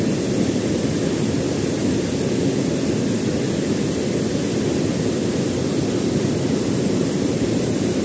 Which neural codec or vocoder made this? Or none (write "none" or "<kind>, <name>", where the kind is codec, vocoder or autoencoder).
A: none